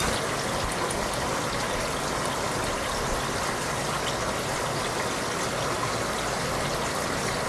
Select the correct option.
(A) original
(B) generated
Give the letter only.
A